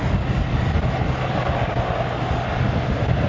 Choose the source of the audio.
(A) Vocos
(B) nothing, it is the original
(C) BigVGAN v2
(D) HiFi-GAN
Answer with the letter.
B